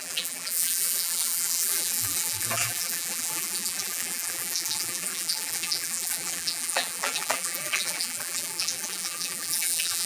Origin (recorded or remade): remade